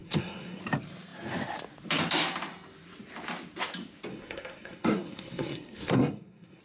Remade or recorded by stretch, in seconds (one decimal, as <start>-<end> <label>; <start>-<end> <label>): 0.0-0.6 remade; 0.6-4.1 recorded; 4.1-6.6 remade